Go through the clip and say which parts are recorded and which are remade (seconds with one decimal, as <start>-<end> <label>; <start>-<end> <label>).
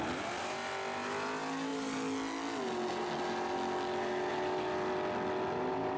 0.0-6.0 recorded